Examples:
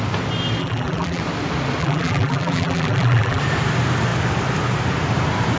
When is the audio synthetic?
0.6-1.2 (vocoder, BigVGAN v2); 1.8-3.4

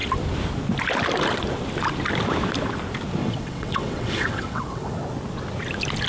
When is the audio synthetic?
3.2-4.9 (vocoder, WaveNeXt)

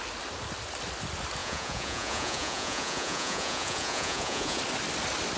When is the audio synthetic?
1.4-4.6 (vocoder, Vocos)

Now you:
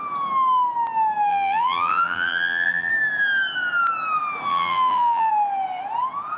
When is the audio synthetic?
1.3-2.9 (vocoder, BigVGAN v2); 4.5-5.3

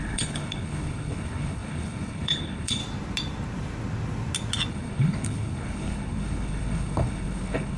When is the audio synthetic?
0.0-2.8 (codec, HILCodec); 4.7-7.8

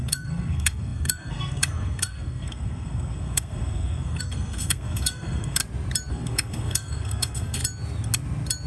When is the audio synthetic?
0.0-5.6 (codec, SNAC); 6.1-7.6

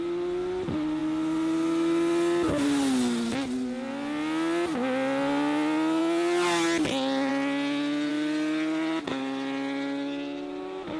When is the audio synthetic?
none